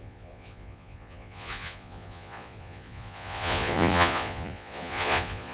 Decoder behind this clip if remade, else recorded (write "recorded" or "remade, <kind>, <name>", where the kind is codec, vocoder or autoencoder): remade, vocoder, Vocos